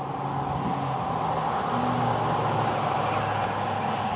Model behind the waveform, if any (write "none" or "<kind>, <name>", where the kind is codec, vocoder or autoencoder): none